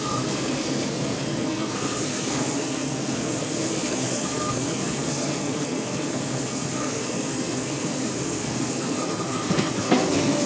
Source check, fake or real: fake